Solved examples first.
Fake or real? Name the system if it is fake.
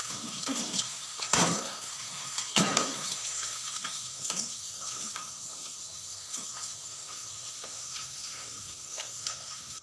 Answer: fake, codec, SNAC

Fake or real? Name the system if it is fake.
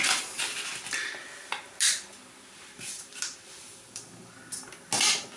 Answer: real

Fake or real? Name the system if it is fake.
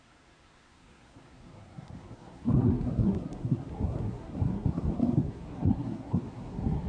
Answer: fake, codec, SNAC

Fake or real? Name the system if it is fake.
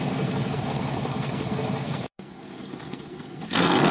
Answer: fake, codec, SNAC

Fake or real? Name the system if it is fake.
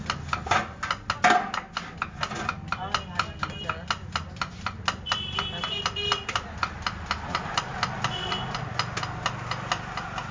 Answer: real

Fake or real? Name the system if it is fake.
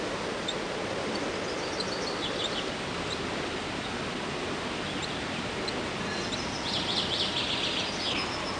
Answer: real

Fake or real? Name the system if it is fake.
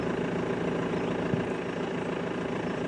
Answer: real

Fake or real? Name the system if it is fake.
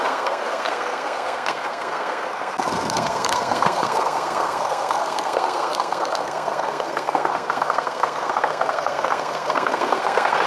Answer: fake, codec, SNAC